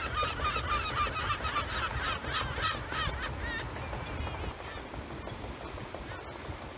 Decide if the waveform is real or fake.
real